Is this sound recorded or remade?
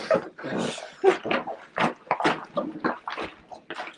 recorded